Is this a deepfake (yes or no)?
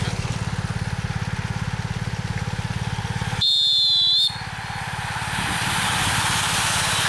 no